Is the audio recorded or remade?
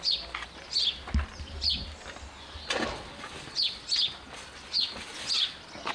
recorded